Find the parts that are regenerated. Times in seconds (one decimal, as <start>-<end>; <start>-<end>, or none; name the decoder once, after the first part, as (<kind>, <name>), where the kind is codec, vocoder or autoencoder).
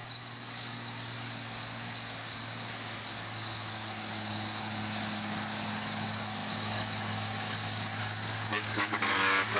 0.0-9.6 (codec, DAC)